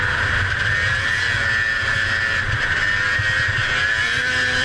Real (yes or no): no